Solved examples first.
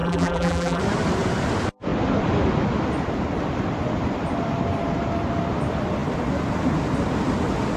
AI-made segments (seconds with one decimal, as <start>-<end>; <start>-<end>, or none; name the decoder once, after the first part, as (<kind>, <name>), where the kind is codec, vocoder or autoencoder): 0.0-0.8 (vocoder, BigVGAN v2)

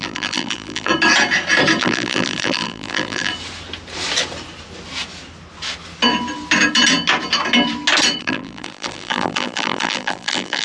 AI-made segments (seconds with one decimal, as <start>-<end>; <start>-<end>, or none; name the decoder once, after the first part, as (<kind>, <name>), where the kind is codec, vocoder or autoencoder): 0.0-0.9 (vocoder, BigVGAN v2); 1.8-3.3; 8.2-10.6

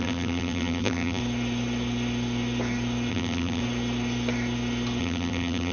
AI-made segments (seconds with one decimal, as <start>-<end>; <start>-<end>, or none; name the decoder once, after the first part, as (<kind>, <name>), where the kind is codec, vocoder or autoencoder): 0.0-1.2 (vocoder, BigVGAN v2); 3.1-3.6; 5.0-5.7